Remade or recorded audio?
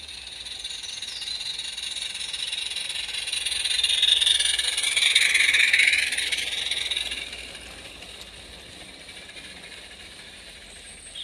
recorded